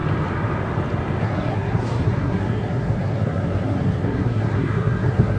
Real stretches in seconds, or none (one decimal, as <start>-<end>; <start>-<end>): 0.0-1.2